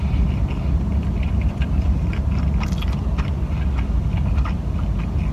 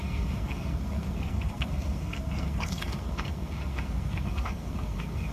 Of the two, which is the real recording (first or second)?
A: first